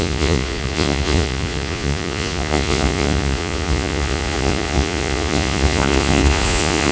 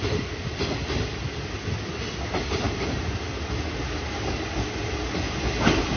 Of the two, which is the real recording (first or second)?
second